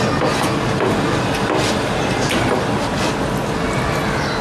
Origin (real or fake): real